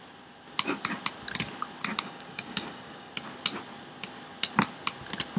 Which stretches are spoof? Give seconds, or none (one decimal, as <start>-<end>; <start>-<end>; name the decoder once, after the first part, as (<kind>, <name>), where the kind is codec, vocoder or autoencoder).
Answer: 1.9-3.1 (codec, DAC)

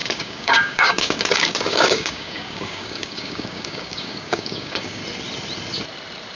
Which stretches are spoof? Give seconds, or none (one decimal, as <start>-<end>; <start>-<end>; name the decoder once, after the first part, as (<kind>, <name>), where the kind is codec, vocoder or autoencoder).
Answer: 0.0-5.0 (codec, DAC)

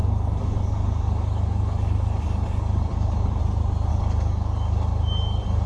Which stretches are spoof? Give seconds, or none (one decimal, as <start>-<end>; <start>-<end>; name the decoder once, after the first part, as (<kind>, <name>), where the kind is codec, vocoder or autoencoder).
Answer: 0.0-3.4 (codec, DAC); 3.9-5.7

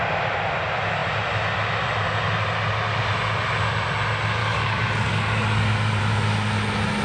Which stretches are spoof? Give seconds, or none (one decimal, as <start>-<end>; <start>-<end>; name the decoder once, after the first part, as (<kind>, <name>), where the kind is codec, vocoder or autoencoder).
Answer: 4.4-6.0 (codec, DAC)

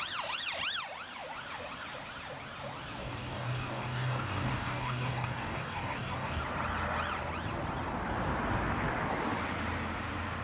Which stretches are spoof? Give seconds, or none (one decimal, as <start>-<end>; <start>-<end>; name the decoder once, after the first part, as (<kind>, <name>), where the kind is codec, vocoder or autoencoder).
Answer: 3.0-6.4 (codec, DAC)